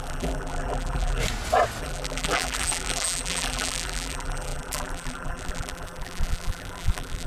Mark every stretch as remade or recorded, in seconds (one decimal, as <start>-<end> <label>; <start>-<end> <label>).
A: 0.0-1.2 remade; 1.2-1.8 recorded; 1.8-7.3 remade